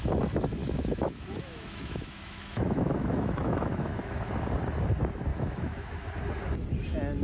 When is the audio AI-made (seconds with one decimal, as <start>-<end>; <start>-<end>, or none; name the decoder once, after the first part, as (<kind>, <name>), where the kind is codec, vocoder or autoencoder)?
0.6-4.3 (autoencoder, DAC-VAE); 5.3-6.1